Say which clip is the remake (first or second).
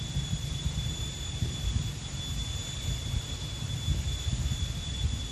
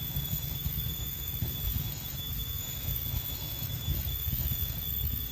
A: second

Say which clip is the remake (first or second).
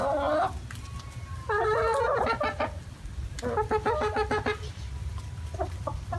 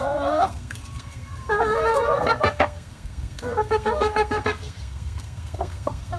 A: second